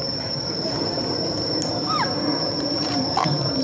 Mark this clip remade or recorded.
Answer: remade